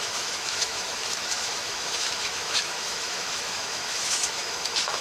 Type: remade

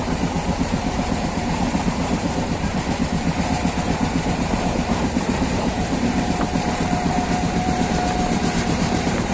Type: remade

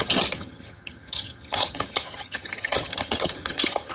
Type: remade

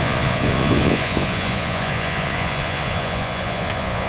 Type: remade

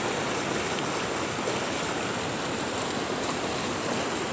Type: recorded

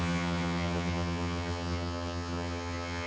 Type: remade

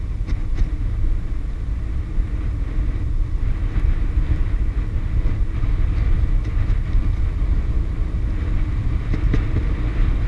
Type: recorded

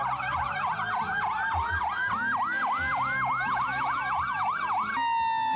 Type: recorded